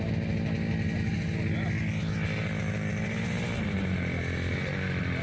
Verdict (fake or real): real